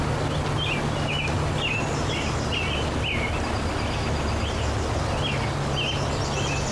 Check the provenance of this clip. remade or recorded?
recorded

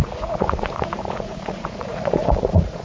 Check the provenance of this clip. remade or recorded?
remade